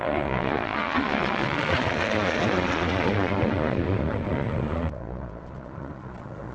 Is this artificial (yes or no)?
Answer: yes